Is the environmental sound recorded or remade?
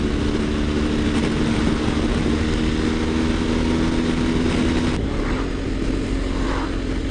recorded